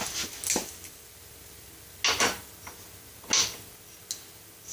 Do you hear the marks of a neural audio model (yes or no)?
no